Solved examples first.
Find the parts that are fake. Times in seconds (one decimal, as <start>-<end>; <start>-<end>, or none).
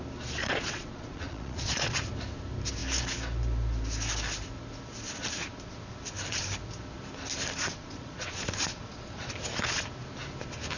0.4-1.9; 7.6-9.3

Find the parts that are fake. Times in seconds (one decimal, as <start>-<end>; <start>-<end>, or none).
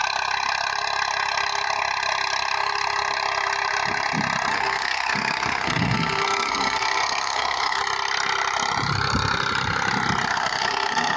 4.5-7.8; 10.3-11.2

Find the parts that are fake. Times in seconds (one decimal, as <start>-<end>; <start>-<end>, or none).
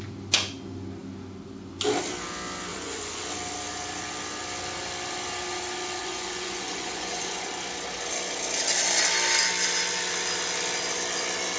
2.7-3.2; 6.0-7.5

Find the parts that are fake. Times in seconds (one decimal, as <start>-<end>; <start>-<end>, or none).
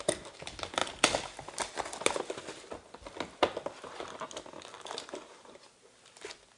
4.7-5.6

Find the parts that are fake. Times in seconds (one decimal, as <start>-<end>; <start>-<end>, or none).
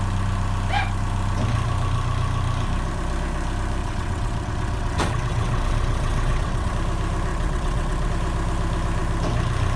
3.8-6.7; 7.3-8.1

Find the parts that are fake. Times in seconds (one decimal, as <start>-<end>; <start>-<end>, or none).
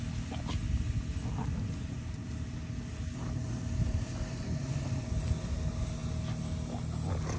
2.9-5.1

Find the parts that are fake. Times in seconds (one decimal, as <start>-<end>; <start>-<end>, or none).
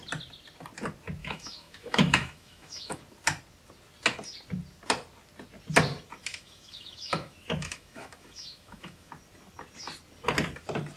1.2-3.0; 6.3-9.1